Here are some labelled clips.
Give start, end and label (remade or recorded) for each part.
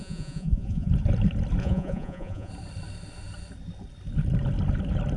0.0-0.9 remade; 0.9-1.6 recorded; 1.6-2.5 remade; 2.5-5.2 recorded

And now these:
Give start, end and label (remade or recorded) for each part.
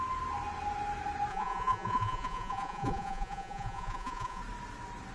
0.0-1.3 recorded; 1.3-4.4 remade; 4.4-5.1 recorded